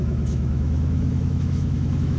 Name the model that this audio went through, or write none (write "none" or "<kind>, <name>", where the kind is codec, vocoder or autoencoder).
autoencoder, DAC-VAE